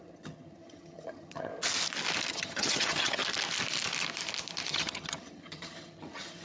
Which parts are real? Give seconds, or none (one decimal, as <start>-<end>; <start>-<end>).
1.5-2.3; 3.2-4.7